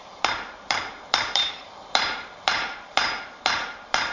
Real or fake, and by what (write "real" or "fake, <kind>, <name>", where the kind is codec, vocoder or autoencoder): fake, vocoder, BigVGAN v2